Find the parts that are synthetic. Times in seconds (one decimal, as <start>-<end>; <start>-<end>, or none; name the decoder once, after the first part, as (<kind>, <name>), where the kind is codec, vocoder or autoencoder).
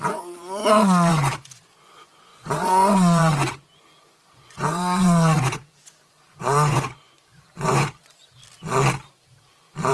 0.0-0.6 (vocoder, Vocos); 1.1-8.4